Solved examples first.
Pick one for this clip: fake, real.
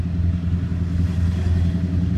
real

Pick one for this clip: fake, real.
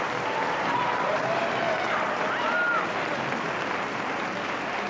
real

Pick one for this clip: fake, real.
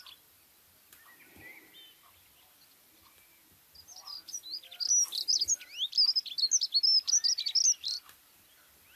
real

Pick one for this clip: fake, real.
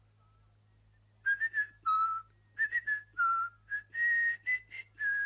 real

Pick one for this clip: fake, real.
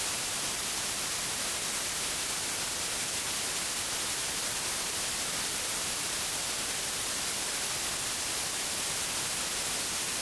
real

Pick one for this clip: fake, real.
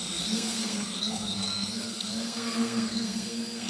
fake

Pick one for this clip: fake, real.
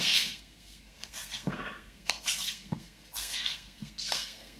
fake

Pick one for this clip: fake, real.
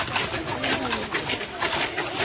real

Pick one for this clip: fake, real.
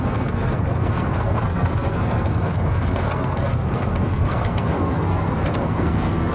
fake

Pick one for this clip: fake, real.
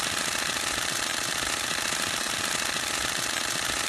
real